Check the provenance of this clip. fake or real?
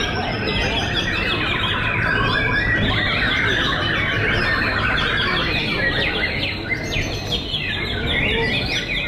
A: real